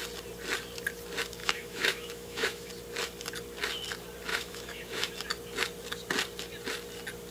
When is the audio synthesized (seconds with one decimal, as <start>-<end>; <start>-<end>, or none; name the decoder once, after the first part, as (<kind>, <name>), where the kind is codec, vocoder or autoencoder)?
1.4-2.7 (autoencoder, DAC-VAE); 4.3-5.1